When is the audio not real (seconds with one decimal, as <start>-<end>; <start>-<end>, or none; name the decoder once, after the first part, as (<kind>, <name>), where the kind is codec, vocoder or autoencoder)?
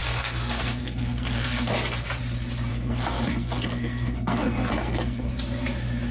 0.0-1.7 (codec, SNAC); 2.7-5.3